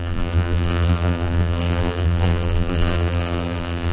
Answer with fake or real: fake